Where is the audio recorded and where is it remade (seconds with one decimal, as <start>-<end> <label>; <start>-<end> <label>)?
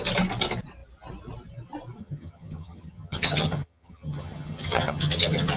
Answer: 0.0-2.0 recorded; 2.0-5.6 remade